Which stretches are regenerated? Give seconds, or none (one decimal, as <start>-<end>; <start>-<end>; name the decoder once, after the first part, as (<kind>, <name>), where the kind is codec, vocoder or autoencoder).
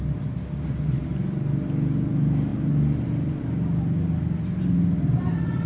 none